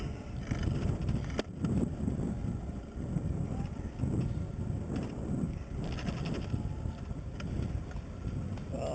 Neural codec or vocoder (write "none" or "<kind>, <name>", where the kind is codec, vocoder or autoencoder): none